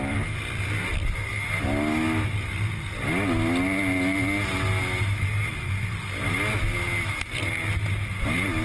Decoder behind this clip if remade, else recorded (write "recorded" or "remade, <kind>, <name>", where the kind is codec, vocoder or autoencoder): recorded